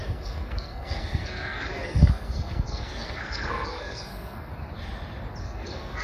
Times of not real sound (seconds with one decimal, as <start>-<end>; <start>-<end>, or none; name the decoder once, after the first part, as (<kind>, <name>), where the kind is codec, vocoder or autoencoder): 0.0-4.5 (codec, SNAC); 5.4-6.0

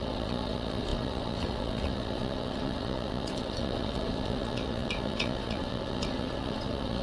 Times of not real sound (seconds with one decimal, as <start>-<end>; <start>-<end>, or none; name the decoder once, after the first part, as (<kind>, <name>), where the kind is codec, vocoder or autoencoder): 0.0-7.0 (vocoder, WaveNeXt)

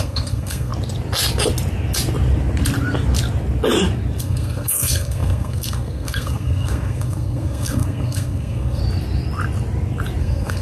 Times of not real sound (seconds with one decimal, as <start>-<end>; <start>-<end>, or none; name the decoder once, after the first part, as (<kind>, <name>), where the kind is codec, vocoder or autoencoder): 0.0-0.7 (codec, SNAC); 4.2-8.8; 10.2-10.6